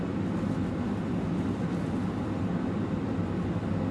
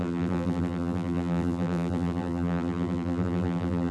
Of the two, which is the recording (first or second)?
first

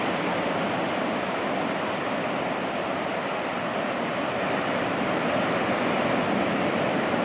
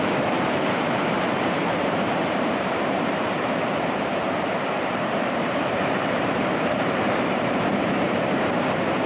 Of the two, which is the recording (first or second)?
first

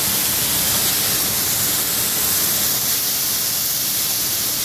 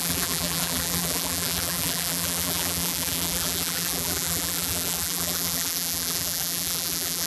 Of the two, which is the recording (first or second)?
first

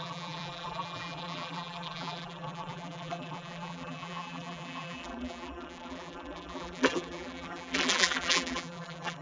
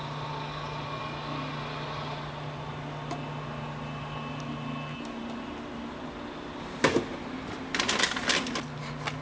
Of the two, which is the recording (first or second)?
second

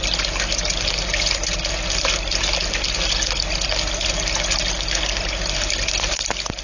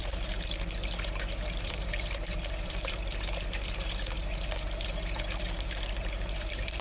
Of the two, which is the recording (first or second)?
first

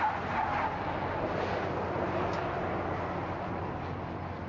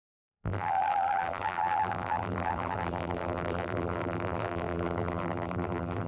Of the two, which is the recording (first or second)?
first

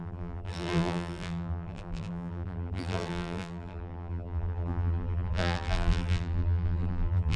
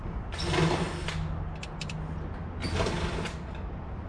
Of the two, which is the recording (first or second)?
second